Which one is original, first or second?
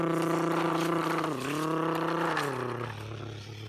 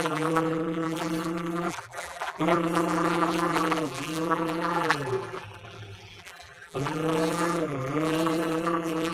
first